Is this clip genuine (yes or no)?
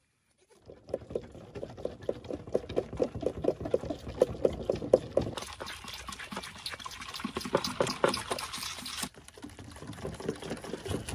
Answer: yes